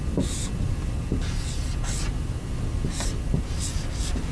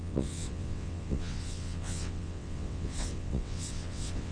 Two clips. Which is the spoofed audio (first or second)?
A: second